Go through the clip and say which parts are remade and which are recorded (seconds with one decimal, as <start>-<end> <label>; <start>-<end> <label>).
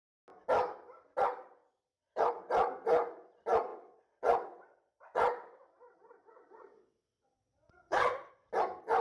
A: 0.0-1.6 recorded; 1.6-2.3 remade; 2.3-3.7 recorded; 3.7-8.3 remade; 8.3-9.0 recorded